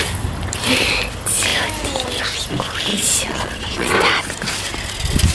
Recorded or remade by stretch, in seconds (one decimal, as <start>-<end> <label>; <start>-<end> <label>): 0.0-2.9 recorded; 2.9-3.9 remade; 3.9-5.3 recorded

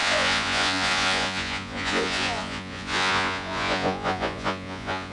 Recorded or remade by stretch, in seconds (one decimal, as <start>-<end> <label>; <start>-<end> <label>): 0.0-5.1 remade

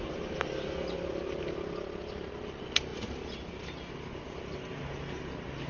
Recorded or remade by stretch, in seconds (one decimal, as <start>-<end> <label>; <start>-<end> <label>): 0.0-5.7 recorded

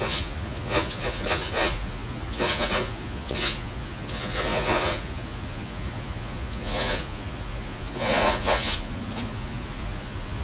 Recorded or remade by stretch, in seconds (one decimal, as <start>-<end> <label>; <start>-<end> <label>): 0.0-10.4 remade

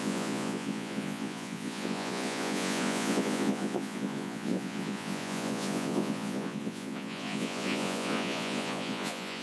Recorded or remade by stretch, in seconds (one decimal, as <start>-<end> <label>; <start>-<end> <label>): 0.0-9.4 remade

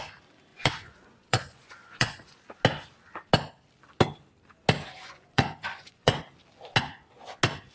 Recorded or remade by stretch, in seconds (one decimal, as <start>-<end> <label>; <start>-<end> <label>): 0.0-0.5 recorded; 0.5-2.4 remade; 2.4-5.0 recorded; 5.0-6.2 remade; 6.2-7.7 recorded

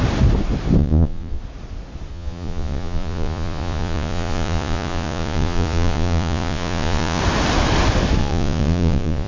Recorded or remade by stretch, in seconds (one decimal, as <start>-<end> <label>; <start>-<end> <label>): 0.0-0.8 recorded; 0.8-1.4 remade; 1.4-2.1 recorded; 2.1-7.2 remade; 7.2-8.2 recorded; 8.2-9.3 remade

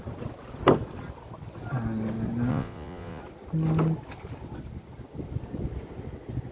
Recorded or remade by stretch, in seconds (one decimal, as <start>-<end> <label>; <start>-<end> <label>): 0.0-2.5 recorded; 2.5-3.2 remade; 3.2-6.5 recorded